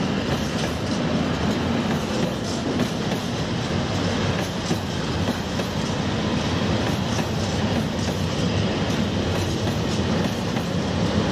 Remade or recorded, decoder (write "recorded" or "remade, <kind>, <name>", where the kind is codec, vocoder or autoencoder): recorded